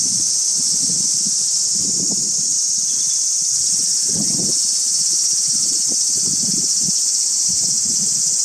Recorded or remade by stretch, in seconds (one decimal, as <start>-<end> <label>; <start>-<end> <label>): 0.0-8.4 remade